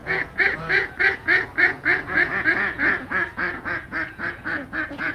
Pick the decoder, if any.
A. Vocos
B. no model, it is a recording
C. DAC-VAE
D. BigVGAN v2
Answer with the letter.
A